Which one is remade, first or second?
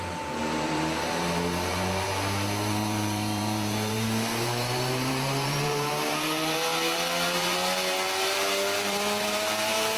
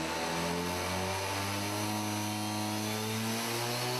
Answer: first